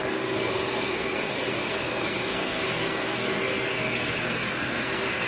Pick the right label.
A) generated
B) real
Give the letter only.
A